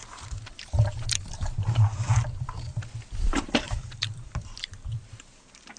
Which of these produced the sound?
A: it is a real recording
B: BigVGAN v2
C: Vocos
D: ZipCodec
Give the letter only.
B